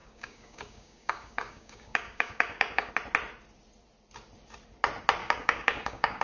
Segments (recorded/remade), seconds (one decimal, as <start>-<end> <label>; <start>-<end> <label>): 0.0-2.9 remade; 2.9-5.2 recorded; 5.2-6.2 remade